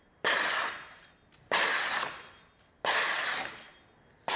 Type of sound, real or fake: real